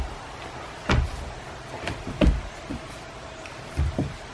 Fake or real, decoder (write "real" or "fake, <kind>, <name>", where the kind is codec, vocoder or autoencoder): real